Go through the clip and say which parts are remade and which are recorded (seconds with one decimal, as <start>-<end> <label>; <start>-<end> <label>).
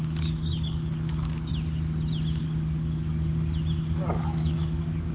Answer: 0.0-1.5 remade; 1.5-2.4 recorded; 2.4-3.1 remade; 3.1-4.1 recorded; 4.1-5.1 remade